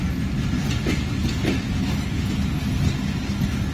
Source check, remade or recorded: recorded